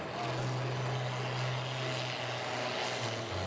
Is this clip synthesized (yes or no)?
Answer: no